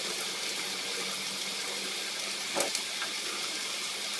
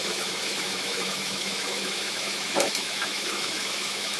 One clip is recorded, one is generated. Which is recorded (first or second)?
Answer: first